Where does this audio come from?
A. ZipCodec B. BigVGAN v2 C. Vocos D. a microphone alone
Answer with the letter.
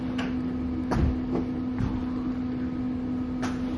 D